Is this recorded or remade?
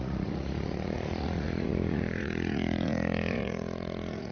remade